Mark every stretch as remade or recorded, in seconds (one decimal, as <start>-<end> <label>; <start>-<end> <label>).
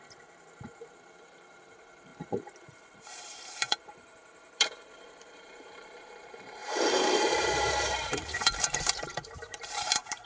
0.0-2.1 remade; 2.1-2.9 recorded; 2.9-10.3 remade